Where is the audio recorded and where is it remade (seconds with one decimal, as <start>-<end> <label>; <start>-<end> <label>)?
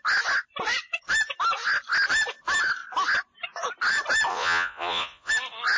0.0-4.3 recorded; 4.3-5.3 remade; 5.3-5.8 recorded